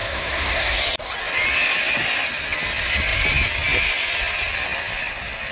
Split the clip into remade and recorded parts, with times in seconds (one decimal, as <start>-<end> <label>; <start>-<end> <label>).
0.0-0.8 remade; 0.8-5.5 recorded